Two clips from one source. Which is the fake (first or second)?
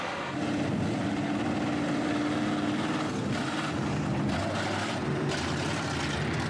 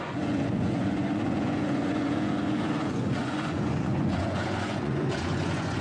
second